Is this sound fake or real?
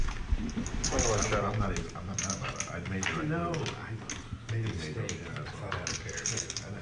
real